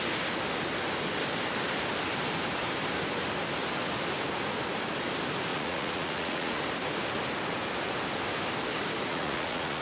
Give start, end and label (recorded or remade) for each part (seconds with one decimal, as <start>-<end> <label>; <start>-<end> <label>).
0.0-5.5 recorded; 5.5-6.6 remade; 6.6-9.1 recorded; 9.1-9.8 remade